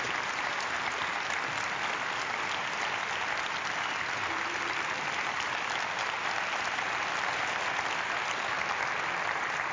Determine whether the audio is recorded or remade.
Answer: recorded